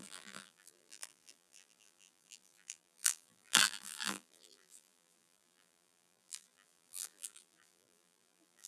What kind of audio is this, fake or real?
fake